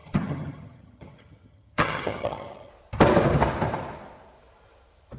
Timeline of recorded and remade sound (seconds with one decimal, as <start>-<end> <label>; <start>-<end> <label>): 0.0-2.7 remade; 2.7-5.2 recorded